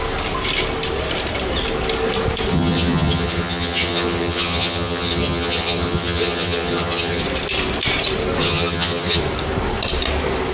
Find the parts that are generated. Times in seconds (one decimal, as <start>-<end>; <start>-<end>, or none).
2.5-7.2; 8.4-9.2